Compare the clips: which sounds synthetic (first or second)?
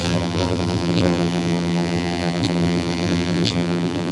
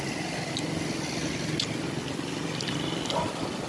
first